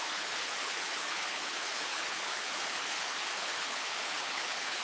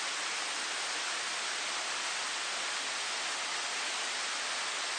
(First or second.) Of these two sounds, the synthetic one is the first